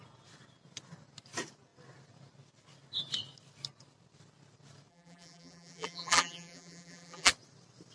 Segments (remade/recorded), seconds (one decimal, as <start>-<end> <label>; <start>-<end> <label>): 0.0-4.9 recorded; 4.9-7.3 remade; 7.3-7.9 recorded